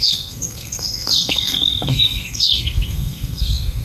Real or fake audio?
fake